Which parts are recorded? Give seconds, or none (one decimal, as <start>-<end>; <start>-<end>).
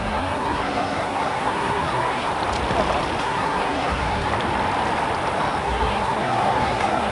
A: 2.3-3.2; 4.3-5.6